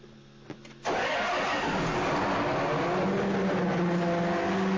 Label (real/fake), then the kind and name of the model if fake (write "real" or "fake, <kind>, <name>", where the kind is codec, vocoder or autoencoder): real